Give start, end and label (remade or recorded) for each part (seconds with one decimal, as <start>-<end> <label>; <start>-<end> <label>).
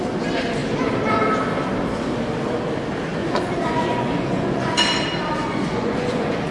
0.0-3.2 recorded; 3.2-4.8 remade; 4.8-5.4 recorded; 5.4-6.5 remade